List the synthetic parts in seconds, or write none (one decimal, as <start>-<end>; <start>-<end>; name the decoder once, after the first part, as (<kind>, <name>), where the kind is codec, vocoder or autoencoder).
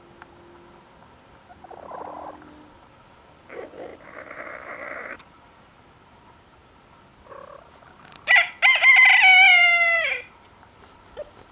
3.9-5.8 (vocoder, BigVGAN v2)